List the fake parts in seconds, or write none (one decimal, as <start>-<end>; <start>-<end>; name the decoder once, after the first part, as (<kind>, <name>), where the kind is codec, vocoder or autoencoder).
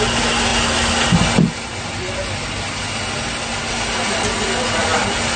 none